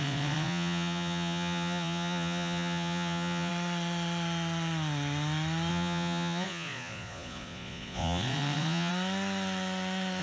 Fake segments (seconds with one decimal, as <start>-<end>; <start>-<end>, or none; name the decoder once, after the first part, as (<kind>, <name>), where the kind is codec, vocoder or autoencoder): 0.0-3.5 (vocoder, Vocos); 5.7-8.9